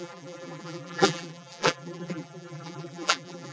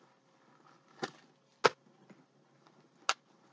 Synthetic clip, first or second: first